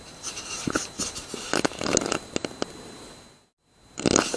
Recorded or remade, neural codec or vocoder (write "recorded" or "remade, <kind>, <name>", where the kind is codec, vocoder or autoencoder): recorded